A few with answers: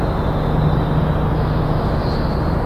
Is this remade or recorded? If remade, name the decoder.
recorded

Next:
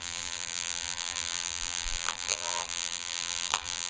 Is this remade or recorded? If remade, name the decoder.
remade, vocoder, BigVGAN v2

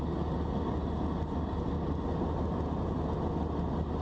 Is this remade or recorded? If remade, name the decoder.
recorded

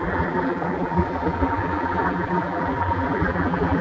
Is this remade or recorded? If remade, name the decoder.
remade, vocoder, BigVGAN v2